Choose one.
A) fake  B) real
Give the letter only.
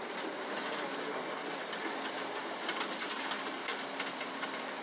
B